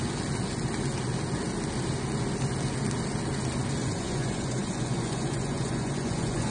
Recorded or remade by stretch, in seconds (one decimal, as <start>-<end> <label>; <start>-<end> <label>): 0.0-3.9 recorded; 3.9-6.5 remade